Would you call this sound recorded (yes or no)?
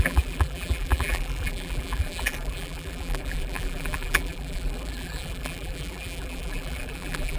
no